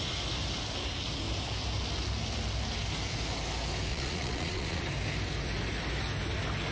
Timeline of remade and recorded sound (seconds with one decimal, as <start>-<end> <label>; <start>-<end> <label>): 0.0-3.9 recorded; 3.9-4.8 remade; 4.8-6.7 recorded

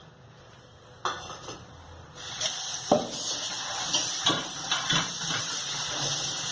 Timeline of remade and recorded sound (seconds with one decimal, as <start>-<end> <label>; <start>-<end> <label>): 0.0-6.5 recorded

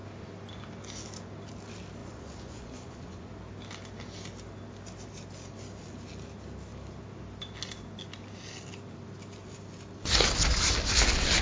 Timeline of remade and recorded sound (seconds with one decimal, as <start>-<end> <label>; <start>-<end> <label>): 0.0-2.0 recorded; 2.0-3.3 remade; 3.3-11.4 recorded

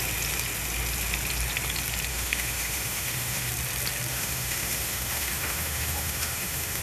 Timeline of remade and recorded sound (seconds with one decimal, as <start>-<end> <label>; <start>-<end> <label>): 0.0-2.1 recorded; 2.1-3.5 remade; 3.5-4.1 recorded; 4.1-6.8 remade